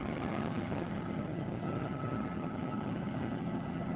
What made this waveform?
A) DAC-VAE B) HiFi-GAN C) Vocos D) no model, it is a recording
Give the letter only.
B